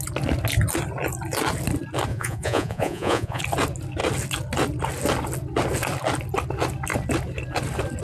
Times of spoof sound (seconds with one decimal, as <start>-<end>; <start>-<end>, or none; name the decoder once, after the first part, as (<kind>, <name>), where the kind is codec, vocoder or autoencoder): 2.1-3.4 (vocoder, Vocos)